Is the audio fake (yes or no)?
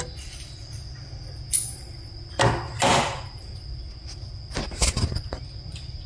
no